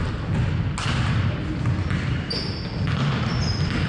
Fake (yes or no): no